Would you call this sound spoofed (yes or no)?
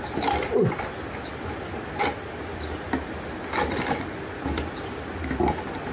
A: no